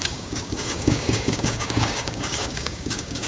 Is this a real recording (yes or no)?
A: no